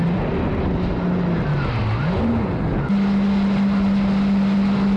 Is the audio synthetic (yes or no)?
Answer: no